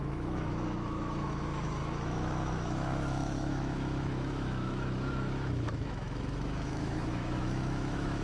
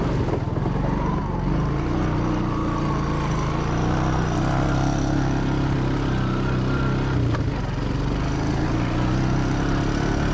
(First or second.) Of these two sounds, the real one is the second